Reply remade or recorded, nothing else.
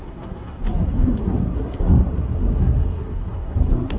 remade